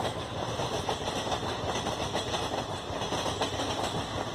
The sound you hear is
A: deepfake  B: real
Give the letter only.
B